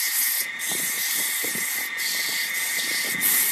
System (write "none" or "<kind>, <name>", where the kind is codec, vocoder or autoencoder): none